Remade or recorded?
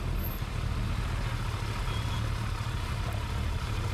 recorded